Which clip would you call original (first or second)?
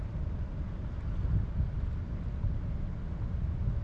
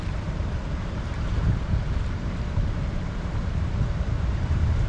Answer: first